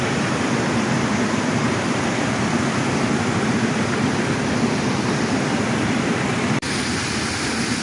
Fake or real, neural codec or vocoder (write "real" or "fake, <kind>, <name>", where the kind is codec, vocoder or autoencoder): fake, vocoder, BigVGAN v2